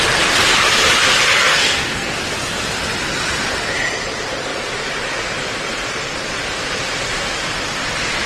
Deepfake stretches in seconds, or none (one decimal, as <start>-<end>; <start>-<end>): 1.5-2.2